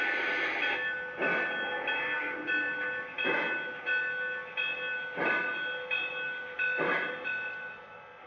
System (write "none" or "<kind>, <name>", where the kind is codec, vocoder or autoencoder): none